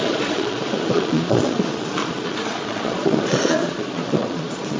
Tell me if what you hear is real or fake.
fake